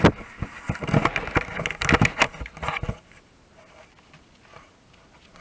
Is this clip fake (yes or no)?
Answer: no